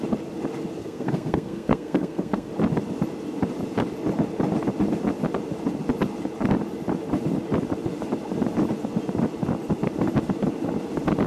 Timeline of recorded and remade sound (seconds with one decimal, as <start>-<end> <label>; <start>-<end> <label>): 0.0-0.8 recorded; 0.8-2.5 remade; 2.5-11.3 recorded